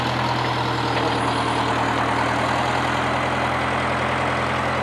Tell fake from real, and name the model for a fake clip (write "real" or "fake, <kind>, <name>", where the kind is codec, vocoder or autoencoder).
real